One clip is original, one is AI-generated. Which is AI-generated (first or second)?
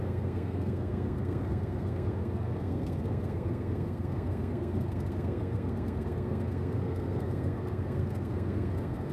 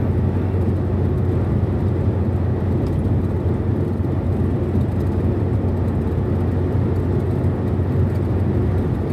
first